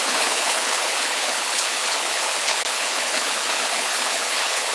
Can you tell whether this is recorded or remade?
remade